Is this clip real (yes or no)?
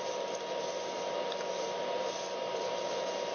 yes